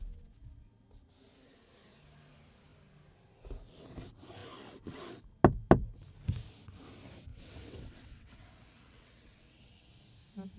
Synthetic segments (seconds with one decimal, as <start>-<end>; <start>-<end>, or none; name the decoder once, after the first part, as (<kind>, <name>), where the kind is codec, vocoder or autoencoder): 7.3-9.9 (vocoder, WaveNeXt)